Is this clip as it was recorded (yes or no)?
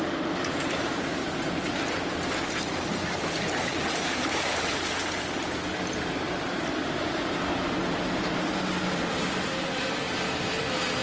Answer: no